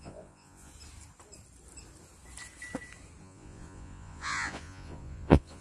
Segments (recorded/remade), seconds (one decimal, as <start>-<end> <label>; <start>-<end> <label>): 0.0-0.7 remade; 0.7-3.2 recorded; 3.2-5.6 remade